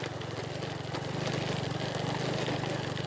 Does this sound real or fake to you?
real